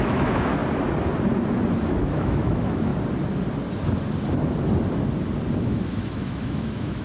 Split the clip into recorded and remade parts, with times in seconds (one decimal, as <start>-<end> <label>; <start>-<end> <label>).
0.0-0.6 remade; 0.6-2.0 recorded; 2.0-2.9 remade; 2.9-5.6 recorded; 5.6-7.0 remade